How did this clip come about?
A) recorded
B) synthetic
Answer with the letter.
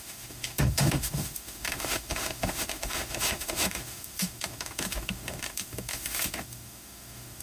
B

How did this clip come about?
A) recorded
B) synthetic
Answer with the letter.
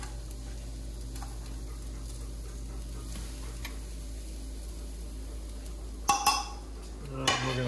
A